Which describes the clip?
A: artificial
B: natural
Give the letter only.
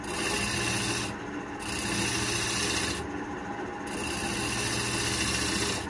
B